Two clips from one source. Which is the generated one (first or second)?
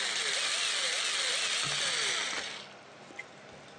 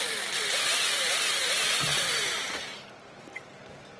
second